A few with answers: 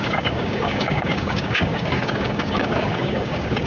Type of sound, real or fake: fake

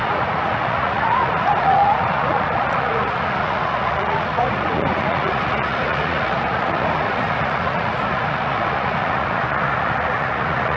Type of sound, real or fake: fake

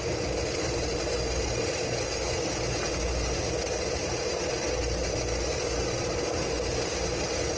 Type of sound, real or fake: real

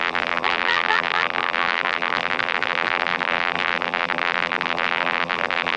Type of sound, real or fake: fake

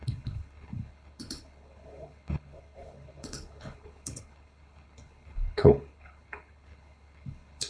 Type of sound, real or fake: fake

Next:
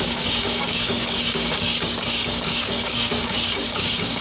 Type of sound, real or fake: fake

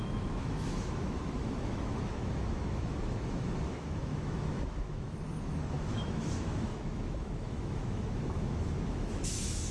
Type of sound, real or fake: fake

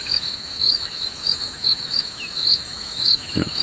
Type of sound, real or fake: fake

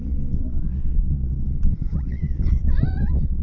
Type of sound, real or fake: fake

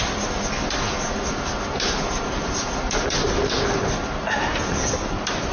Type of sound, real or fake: real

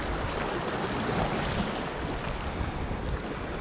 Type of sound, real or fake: real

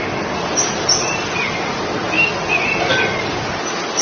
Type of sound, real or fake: real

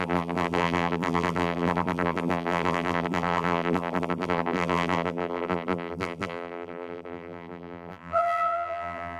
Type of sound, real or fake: fake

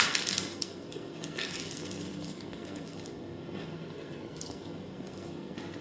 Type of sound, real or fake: fake